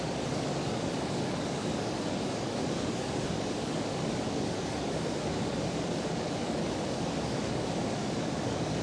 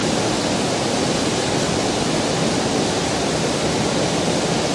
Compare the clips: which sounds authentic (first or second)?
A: second